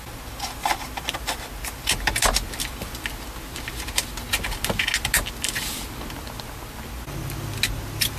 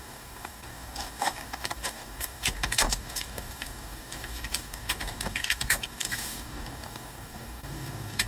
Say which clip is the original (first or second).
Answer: first